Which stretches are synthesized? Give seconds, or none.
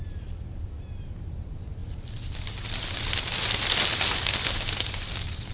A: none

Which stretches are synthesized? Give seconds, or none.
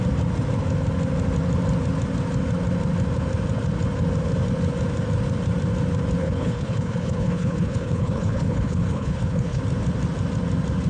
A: 6.2-9.6 (codec, HILCodec)